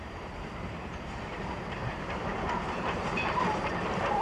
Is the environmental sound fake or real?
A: fake